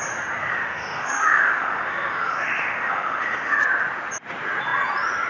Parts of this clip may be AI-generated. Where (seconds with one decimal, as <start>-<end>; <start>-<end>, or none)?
0.4-3.6

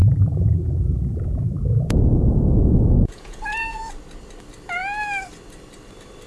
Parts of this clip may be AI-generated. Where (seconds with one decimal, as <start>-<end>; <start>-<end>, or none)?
0.0-3.8